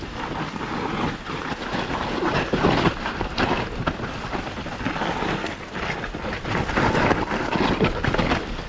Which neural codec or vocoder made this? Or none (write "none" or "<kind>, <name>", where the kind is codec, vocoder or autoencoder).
none